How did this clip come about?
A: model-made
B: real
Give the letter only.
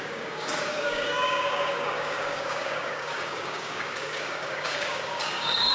A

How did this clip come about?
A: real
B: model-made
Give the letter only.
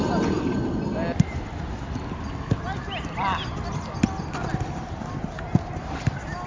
A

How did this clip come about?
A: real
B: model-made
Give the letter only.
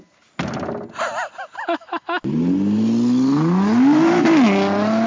A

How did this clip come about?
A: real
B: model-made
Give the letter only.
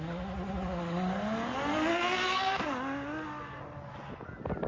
A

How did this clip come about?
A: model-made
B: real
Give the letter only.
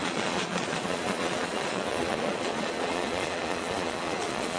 A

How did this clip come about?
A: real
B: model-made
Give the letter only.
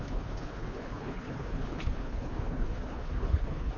B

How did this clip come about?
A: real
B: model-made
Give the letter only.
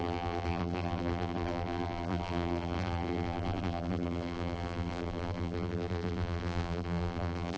B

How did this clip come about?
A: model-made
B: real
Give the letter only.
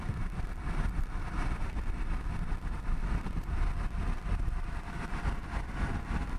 A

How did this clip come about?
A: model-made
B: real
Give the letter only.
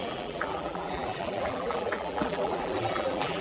A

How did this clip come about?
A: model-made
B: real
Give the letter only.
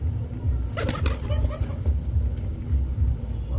B